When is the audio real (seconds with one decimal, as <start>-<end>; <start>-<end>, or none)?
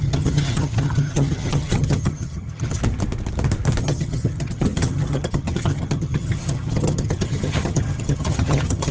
2.8-3.8